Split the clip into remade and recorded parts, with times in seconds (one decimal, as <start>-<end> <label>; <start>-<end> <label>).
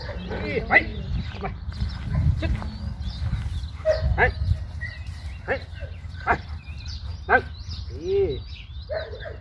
0.0-5.8 recorded; 5.8-6.5 remade; 6.5-9.4 recorded